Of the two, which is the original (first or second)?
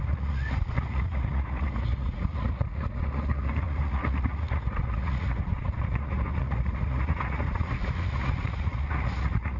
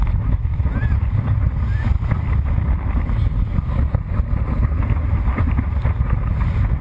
second